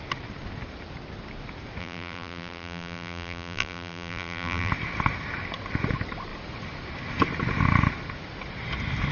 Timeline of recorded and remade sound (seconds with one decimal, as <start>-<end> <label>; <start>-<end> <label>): 0.0-1.8 recorded; 1.8-4.7 remade; 4.7-9.1 recorded